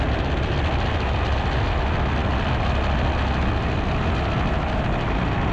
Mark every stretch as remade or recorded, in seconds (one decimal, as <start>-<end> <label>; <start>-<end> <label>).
0.0-5.5 recorded